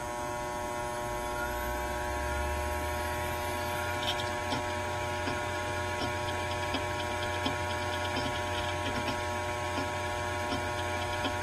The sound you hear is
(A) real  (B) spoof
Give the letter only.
A